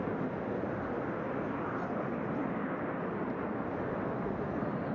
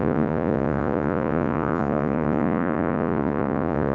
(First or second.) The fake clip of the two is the second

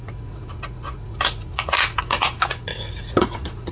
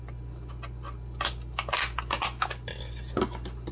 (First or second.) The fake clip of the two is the first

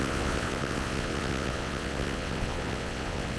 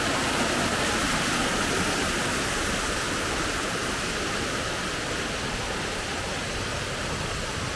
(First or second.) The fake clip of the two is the first